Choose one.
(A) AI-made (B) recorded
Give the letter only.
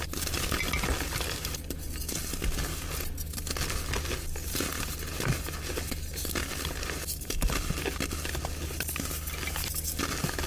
B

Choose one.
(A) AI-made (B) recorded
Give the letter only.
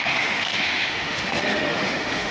A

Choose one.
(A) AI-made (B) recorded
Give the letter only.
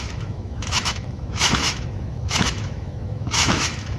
A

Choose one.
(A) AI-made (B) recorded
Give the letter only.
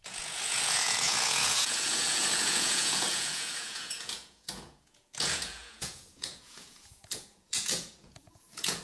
A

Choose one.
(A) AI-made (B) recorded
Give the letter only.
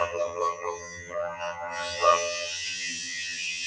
A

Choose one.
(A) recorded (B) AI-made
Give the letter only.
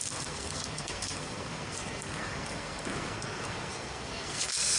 B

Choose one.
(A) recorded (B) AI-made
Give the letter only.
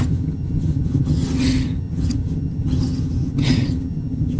B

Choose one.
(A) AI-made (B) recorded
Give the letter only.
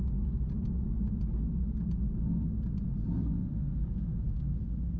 B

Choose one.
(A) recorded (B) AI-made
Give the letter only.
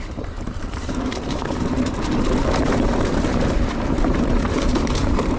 B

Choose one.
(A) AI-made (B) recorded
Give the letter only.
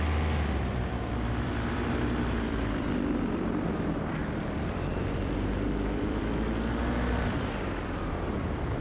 A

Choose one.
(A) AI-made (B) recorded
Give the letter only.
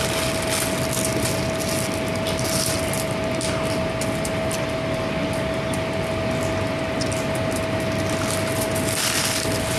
B